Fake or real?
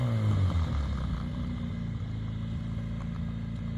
real